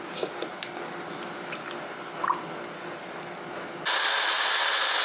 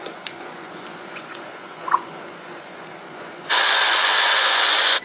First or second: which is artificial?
second